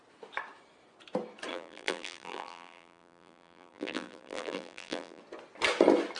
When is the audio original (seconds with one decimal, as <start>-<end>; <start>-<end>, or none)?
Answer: 0.0-1.5; 5.2-6.2